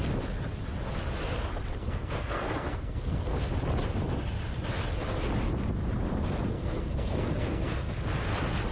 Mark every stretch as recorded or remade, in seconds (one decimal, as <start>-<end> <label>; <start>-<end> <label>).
0.0-1.8 recorded; 1.8-3.4 remade; 3.4-6.5 recorded; 6.5-7.9 remade; 7.9-8.7 recorded